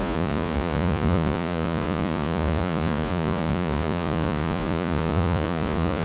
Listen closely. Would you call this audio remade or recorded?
remade